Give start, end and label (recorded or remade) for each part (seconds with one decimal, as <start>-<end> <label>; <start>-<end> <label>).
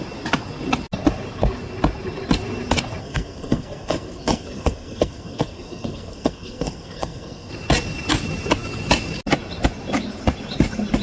0.0-3.0 recorded; 3.0-7.5 remade; 7.5-11.0 recorded